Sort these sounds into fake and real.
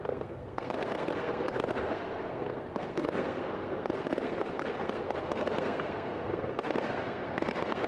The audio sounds fake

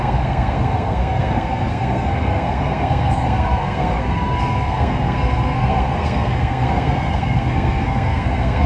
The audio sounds fake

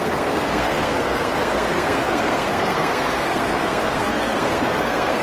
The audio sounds fake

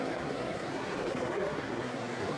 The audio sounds fake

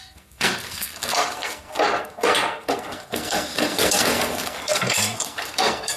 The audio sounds fake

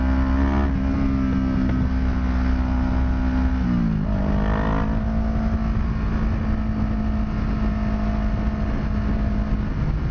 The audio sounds real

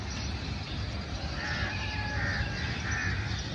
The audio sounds real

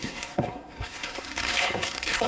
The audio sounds fake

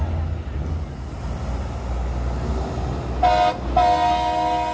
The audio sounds real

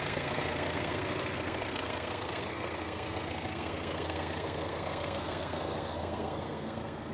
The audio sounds fake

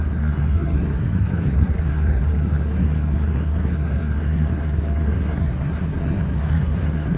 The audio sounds fake